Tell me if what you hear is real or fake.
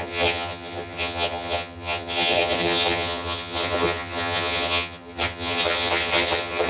fake